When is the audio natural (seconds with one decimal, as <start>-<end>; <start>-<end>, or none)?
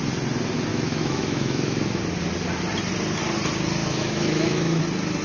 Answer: 0.0-0.7; 2.0-3.8; 4.8-5.2